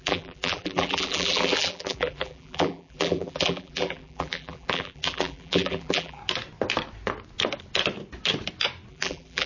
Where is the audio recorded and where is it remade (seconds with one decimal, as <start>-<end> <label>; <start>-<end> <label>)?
0.0-6.2 remade; 6.2-8.9 recorded; 8.9-9.5 remade

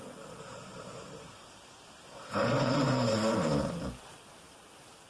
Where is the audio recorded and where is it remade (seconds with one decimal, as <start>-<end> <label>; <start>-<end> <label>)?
0.0-0.7 recorded; 0.7-3.7 remade; 3.7-5.1 recorded

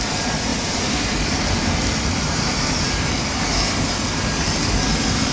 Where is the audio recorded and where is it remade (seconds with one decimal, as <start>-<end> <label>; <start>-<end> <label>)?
0.0-0.5 recorded; 0.5-3.1 remade; 3.1-5.3 recorded

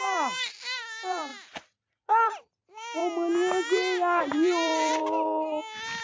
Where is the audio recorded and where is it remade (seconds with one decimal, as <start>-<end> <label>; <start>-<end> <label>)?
0.0-3.0 remade; 3.0-4.2 recorded; 4.2-5.0 remade; 5.0-6.0 recorded